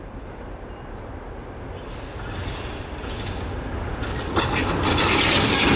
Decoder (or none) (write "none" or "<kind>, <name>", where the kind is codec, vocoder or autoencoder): none